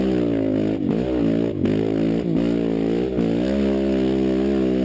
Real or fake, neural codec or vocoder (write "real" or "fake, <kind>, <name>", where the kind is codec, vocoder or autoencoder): real